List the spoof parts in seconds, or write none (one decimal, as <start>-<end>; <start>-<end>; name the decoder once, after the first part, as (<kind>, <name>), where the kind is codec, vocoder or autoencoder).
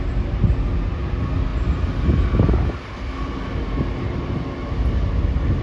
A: none